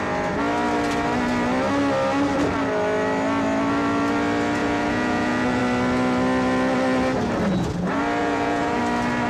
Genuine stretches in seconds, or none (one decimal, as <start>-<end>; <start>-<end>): 0.0-4.6; 5.6-8.2; 8.8-9.3